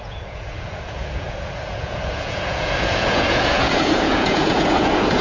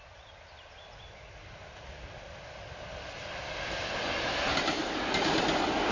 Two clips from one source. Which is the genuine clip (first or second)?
second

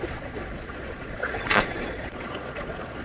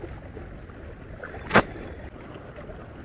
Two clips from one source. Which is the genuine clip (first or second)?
second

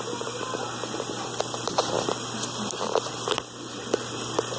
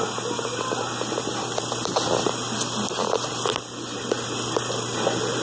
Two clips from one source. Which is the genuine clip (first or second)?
second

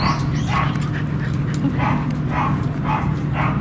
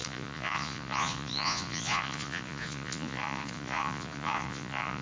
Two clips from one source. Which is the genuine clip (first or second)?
first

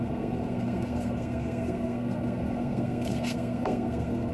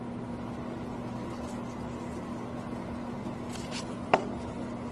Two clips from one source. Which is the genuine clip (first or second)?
second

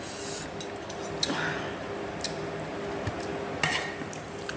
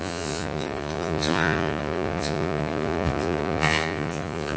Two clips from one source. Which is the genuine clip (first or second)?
first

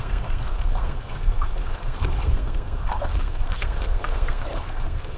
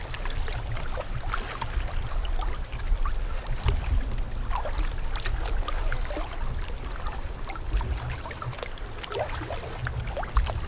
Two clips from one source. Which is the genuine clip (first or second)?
second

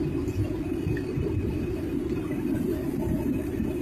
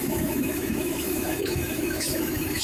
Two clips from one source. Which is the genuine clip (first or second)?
first